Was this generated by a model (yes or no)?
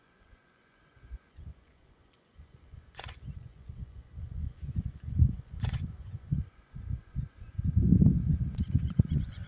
yes